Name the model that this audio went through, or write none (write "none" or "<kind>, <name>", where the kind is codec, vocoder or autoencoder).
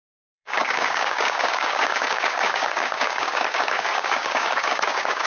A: codec, DAC